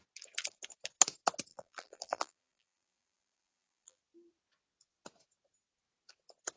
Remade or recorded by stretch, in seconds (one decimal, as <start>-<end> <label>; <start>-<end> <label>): 0.0-1.5 recorded; 1.5-4.0 remade; 4.0-6.6 recorded